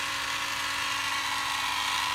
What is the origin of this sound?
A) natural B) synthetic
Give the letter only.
A